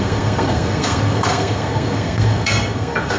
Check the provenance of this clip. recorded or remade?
remade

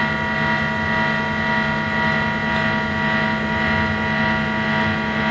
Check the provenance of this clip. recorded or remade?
recorded